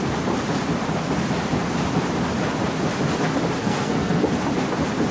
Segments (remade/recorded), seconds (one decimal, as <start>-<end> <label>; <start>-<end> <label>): 0.0-3.6 recorded; 3.6-4.2 remade; 4.2-5.1 recorded